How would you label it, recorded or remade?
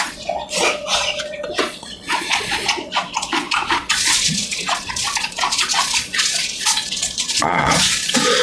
remade